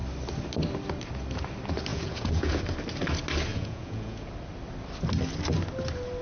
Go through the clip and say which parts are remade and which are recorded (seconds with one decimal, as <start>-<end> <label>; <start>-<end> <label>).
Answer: 0.0-1.9 recorded; 1.9-2.6 remade; 2.6-3.5 recorded; 3.5-4.3 remade; 4.3-6.2 recorded